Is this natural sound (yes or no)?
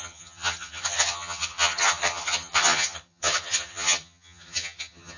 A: no